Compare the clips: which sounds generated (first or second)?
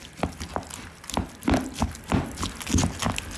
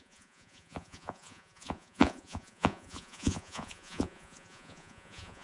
second